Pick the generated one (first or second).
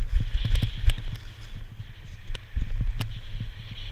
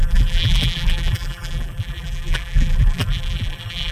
second